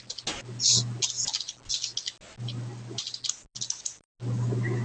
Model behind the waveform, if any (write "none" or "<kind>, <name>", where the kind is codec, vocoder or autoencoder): none